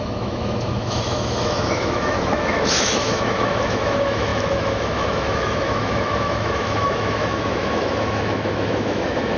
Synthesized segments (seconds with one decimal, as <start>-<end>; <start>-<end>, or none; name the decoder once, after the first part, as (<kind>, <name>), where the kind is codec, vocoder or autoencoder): 0.0-9.4 (autoencoder, DAC-VAE)